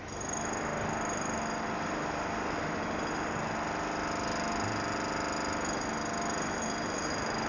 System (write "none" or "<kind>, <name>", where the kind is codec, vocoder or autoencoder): none